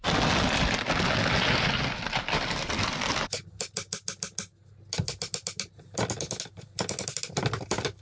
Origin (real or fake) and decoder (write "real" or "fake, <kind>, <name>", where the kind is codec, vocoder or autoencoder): real